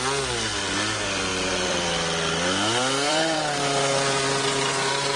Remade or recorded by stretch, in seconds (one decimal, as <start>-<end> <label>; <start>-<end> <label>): 0.0-1.3 recorded; 1.3-4.4 remade; 4.4-5.2 recorded